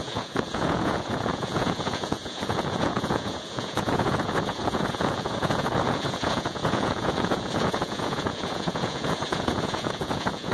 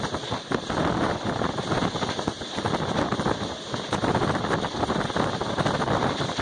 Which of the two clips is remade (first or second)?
first